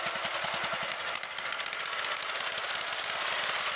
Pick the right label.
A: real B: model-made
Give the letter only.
A